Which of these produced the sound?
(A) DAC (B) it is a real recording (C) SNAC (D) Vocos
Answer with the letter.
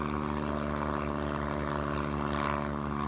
B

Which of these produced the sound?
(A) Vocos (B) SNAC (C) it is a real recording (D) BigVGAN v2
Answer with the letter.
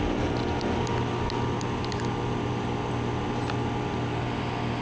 C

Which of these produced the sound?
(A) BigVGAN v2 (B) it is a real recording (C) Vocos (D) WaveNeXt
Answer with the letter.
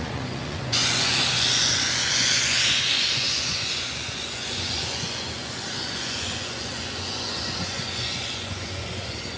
C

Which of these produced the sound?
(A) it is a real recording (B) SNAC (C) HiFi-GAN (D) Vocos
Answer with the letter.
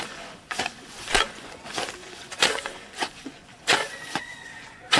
D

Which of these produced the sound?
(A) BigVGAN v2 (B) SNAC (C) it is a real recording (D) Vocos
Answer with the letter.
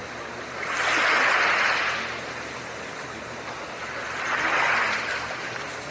C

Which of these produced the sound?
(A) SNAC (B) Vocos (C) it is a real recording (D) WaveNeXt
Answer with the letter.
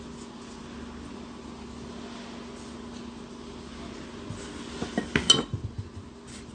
C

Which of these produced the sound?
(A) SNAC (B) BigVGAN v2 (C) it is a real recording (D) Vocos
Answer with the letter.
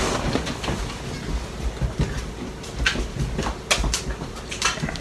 C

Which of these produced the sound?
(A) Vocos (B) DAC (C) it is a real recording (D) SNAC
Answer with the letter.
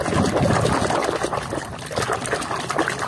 C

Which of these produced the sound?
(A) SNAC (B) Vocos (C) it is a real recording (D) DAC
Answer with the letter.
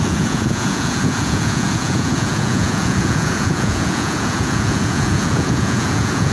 B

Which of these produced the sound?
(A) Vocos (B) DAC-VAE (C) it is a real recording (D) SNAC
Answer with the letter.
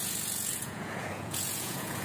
A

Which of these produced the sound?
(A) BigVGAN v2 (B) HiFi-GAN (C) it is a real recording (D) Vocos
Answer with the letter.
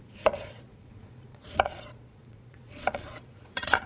D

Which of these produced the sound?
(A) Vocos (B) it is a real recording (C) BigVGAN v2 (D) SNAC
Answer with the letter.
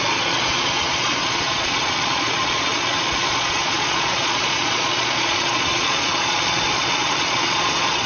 A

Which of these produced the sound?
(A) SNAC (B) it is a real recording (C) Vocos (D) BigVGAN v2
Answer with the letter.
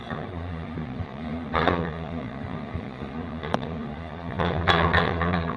C